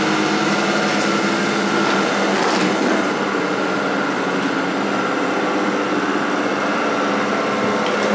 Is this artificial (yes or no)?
no